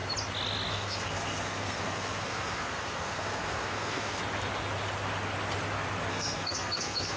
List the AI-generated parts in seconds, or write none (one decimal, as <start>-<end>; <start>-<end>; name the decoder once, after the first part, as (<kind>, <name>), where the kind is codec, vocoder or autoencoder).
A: 0.7-4.2 (codec, SNAC); 6.1-7.2